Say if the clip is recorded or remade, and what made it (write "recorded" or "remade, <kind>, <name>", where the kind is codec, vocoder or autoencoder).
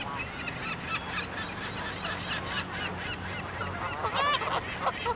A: recorded